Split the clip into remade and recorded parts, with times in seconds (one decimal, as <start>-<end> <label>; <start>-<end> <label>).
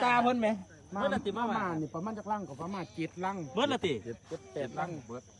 0.0-5.4 recorded